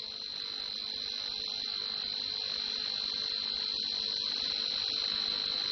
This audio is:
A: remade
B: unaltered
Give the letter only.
B